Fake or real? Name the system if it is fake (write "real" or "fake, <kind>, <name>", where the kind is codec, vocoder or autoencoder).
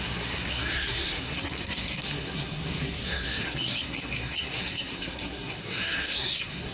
fake, codec, SNAC